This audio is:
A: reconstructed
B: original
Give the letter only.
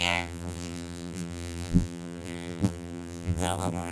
A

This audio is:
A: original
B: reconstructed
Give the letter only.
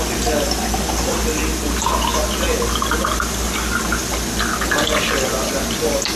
A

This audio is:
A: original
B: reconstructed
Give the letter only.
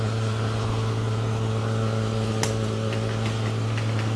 A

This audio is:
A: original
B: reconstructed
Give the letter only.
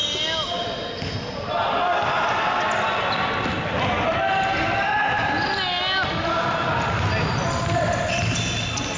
A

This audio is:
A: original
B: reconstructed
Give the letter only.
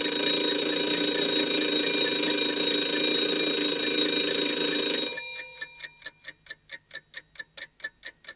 A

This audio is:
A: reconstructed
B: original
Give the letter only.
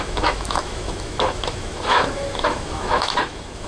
A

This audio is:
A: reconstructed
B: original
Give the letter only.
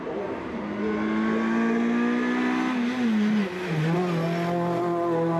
B